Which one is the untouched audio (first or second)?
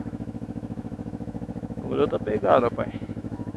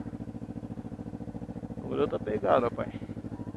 second